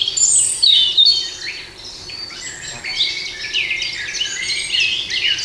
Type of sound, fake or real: real